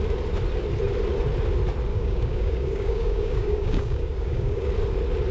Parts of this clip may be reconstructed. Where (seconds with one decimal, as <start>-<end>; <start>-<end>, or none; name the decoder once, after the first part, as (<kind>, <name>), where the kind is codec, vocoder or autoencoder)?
1.9-4.7 (codec, DAC)